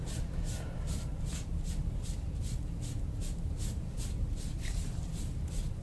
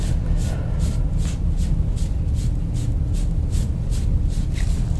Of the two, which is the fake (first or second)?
first